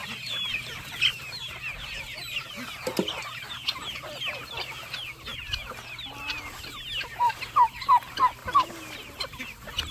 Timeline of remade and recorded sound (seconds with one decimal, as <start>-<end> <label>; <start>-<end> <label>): 0.0-1.2 remade; 1.2-8.4 recorded; 8.4-9.4 remade; 9.4-9.9 recorded